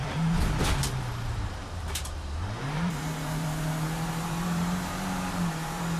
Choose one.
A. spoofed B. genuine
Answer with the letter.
A